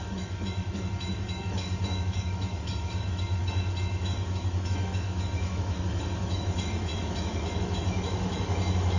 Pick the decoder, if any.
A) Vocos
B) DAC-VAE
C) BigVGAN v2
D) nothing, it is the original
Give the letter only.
B